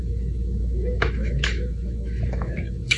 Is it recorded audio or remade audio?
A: remade